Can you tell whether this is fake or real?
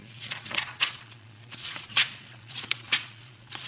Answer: fake